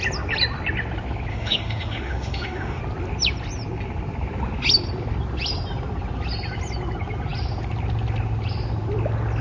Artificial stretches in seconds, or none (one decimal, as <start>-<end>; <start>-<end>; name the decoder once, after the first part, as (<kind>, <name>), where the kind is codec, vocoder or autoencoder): 1.3-2.8 (autoencoder, DAC-VAE)